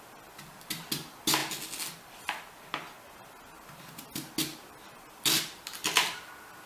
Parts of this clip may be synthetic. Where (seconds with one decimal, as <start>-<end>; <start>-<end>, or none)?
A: none